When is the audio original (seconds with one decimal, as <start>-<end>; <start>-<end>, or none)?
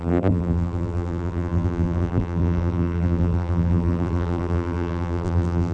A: none